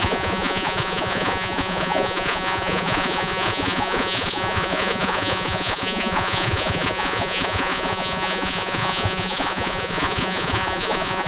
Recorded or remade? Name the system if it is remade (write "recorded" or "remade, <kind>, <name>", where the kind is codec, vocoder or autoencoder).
remade, vocoder, Vocos